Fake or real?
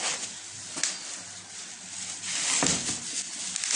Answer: real